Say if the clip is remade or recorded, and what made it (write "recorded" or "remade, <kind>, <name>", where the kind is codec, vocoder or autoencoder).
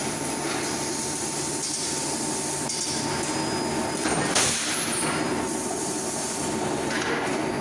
recorded